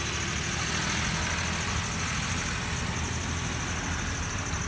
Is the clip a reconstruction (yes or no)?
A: no